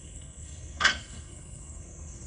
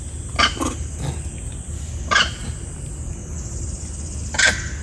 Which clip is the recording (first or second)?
second